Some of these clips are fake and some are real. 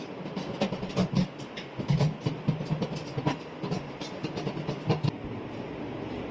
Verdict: real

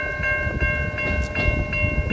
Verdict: real